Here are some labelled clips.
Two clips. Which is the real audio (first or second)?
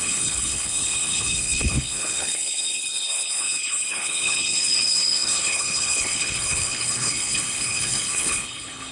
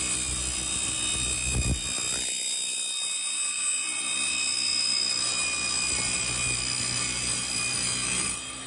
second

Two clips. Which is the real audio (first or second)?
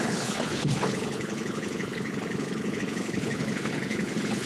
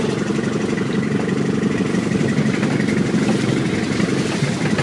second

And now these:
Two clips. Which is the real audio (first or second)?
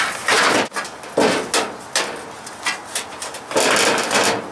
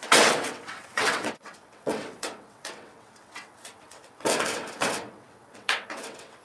first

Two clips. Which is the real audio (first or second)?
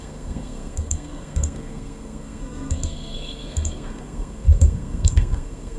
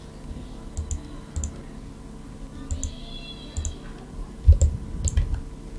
second